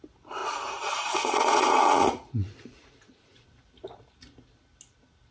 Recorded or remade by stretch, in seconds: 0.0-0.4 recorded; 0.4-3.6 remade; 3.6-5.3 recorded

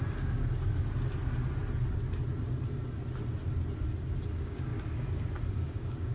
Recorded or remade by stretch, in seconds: 0.0-0.6 remade; 0.6-4.3 recorded; 4.3-4.7 remade; 4.7-5.5 recorded; 5.5-6.1 remade

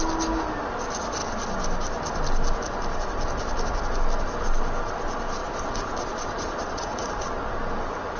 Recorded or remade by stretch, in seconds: 0.0-5.4 recorded; 5.4-7.5 remade; 7.5-8.2 recorded

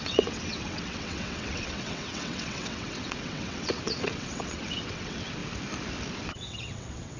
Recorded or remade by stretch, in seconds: 0.0-5.4 remade; 5.4-6.2 recorded; 6.2-7.2 remade

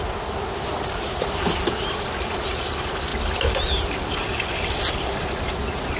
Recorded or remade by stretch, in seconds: 0.0-6.0 recorded

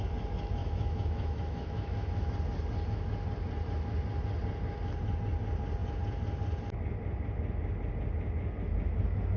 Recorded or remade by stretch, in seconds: 0.0-0.6 recorded; 0.6-2.3 remade; 2.3-9.4 recorded

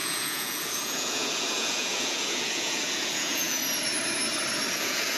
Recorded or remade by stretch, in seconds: 0.0-3.6 remade; 3.6-4.7 recorded; 4.7-5.2 remade